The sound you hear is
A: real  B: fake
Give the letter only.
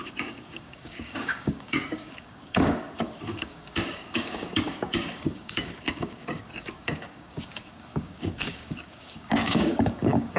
B